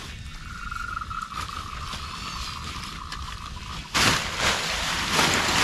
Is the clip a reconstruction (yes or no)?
no